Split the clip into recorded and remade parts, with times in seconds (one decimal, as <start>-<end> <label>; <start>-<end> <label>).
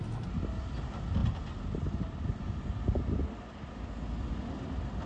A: 0.0-5.1 recorded